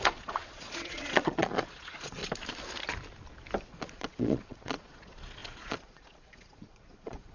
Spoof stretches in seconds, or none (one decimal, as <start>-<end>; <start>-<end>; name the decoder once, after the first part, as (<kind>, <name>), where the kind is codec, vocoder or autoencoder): 0.0-2.2 (vocoder, Vocos); 3.7-7.3